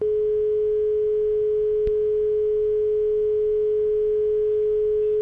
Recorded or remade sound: recorded